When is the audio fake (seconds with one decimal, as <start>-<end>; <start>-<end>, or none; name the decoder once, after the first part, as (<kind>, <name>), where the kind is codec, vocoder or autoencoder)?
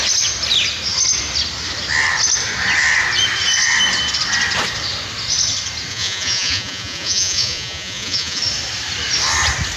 5.9-8.4 (vocoder, Vocos)